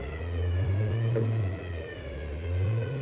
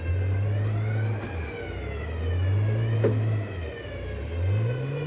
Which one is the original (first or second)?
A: second